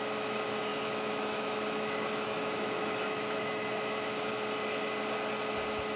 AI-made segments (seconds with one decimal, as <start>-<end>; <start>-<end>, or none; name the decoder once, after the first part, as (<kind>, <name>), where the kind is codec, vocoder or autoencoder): 0.7-4.3 (autoencoder, DAC-VAE)